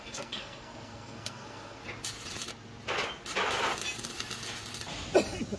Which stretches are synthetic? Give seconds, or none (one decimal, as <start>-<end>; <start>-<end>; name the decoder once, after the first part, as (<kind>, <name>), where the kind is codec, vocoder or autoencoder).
0.0-1.8 (codec, SNAC)